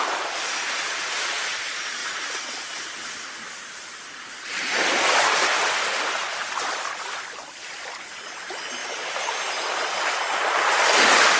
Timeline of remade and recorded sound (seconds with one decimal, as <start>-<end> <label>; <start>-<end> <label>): 0.0-2.0 recorded; 2.0-4.9 remade; 4.9-8.8 recorded; 8.8-9.4 remade; 9.4-11.4 recorded